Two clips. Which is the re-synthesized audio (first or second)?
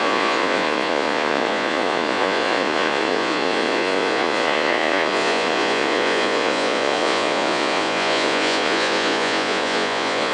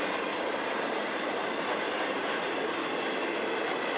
first